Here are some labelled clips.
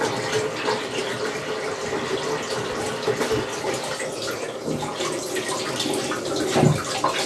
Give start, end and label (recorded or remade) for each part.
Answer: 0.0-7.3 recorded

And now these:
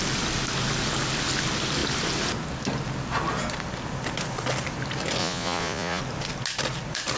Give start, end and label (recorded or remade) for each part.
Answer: 0.0-5.2 recorded; 5.2-6.0 remade; 6.0-7.2 recorded

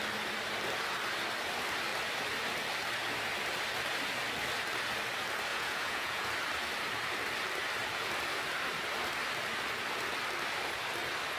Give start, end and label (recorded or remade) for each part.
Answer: 0.0-5.5 recorded; 5.5-6.3 remade; 6.3-11.4 recorded

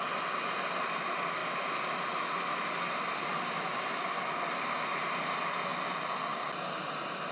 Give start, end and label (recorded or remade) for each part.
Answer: 0.0-7.3 recorded

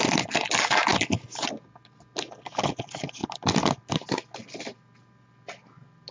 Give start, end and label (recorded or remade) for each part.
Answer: 0.0-6.1 recorded

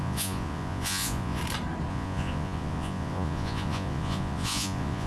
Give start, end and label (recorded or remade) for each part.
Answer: 0.0-1.4 remade; 1.4-1.9 recorded; 1.9-5.1 remade

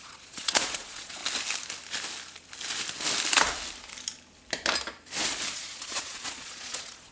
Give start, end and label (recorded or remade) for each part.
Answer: 0.0-1.2 remade; 1.2-5.5 recorded; 5.5-7.1 remade